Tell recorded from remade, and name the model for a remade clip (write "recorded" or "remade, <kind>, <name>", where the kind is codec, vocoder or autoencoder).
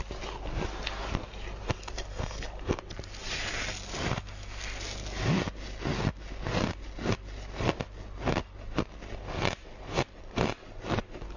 recorded